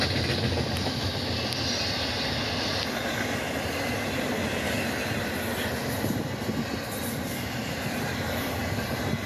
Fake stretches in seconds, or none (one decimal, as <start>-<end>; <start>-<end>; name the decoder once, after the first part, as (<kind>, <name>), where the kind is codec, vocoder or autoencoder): none